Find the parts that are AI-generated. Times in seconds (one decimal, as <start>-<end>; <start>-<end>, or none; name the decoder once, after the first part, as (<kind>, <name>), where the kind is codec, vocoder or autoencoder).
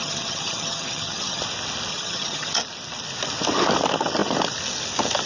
0.0-1.4 (vocoder, HiFi-GAN); 1.9-2.6